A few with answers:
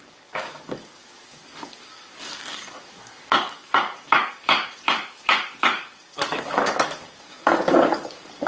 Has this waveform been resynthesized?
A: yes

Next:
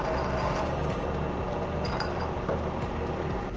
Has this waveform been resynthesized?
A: no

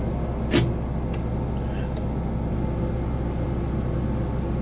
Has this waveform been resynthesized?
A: no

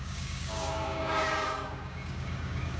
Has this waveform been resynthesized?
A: yes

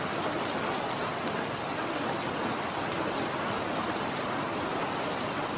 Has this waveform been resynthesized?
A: no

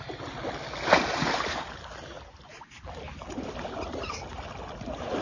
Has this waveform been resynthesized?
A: no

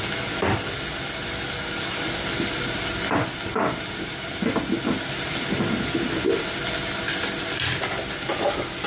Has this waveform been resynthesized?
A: no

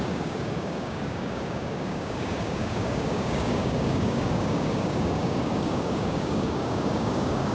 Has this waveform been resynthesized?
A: yes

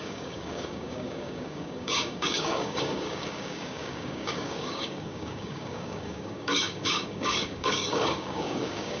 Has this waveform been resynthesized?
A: yes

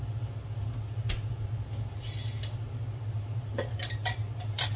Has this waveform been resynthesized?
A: no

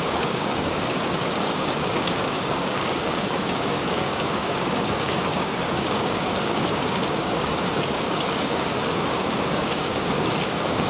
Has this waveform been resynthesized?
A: yes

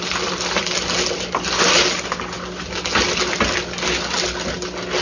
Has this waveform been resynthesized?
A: no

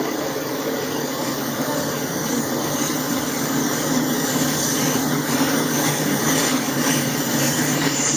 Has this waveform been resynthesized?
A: yes